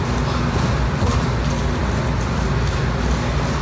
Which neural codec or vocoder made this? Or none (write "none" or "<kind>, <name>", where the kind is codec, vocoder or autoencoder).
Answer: none